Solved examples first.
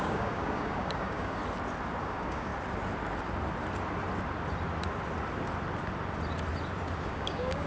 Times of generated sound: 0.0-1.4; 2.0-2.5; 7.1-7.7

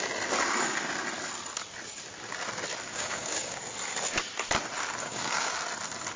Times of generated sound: 2.9-3.6; 5.0-5.5

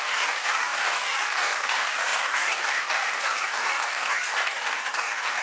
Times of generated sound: 0.0-5.4

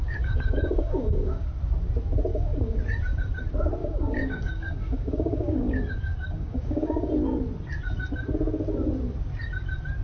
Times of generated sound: 0.0-1.5; 2.3-2.8; 3.8-7.1

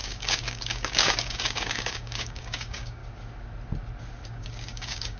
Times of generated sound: 0.0-3.0; 4.3-5.2